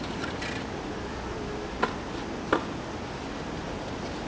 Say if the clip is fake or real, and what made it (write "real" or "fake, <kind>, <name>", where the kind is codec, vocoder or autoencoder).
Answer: real